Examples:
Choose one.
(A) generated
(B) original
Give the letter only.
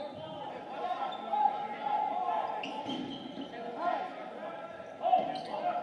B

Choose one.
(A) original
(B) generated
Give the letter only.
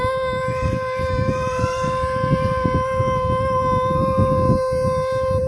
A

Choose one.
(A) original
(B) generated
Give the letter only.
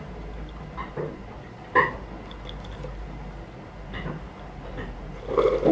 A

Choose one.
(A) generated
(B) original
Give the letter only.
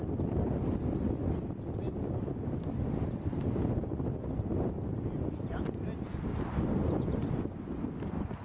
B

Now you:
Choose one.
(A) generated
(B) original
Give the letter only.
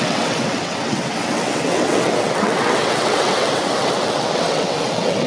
A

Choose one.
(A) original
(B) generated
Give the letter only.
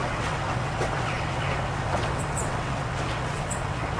B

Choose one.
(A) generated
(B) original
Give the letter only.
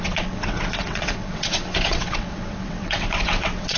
A